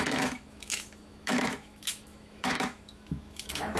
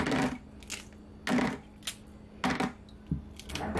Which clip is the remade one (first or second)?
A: first